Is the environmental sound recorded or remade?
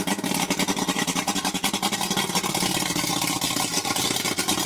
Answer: remade